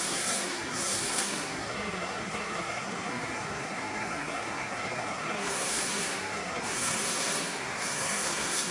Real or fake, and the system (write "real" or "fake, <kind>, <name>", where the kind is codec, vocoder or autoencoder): fake, codec, SNAC